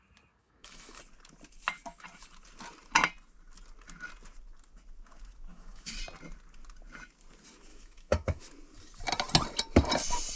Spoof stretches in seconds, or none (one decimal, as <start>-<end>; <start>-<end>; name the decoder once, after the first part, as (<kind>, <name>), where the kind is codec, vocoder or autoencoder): 0.4-1.0 (autoencoder, DAC-VAE); 5.5-6.0; 7.7-8.4